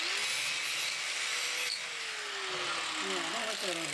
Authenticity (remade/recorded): recorded